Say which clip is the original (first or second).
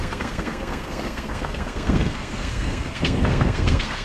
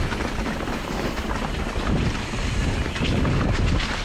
second